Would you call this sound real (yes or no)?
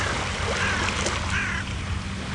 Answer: yes